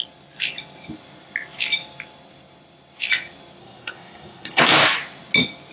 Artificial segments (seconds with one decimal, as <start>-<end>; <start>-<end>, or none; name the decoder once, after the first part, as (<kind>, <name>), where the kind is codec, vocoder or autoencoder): 3.6-4.6 (codec, SNAC)